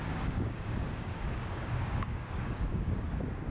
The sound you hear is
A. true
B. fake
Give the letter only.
B